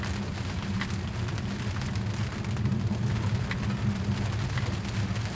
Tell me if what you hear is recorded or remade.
recorded